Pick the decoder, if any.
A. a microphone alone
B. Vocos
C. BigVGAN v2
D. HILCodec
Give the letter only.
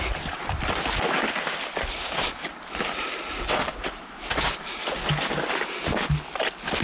A